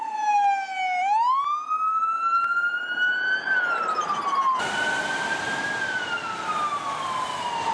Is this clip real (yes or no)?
yes